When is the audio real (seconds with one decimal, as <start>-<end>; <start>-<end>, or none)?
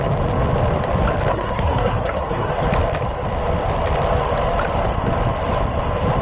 0.0-1.3; 2.5-6.2